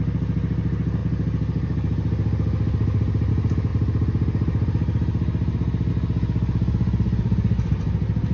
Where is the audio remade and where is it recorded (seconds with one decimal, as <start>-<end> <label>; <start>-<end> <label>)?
0.0-8.3 recorded